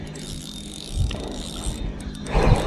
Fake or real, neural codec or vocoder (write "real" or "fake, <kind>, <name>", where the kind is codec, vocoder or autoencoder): real